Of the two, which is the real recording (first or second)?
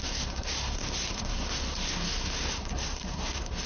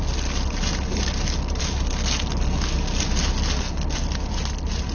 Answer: second